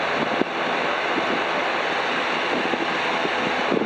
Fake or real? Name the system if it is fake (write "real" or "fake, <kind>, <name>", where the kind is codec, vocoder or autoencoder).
real